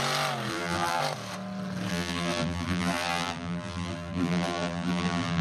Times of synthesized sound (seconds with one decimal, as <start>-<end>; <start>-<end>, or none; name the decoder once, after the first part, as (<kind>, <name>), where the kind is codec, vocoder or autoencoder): 0.5-1.0 (vocoder, BigVGAN v2); 1.9-5.4